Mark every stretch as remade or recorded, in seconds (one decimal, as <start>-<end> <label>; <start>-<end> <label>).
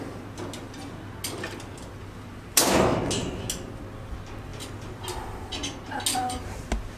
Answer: 0.0-7.0 recorded